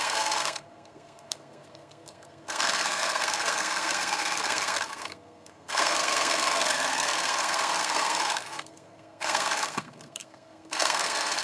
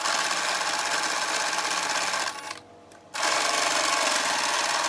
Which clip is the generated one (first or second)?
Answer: first